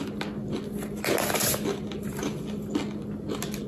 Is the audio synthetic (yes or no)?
no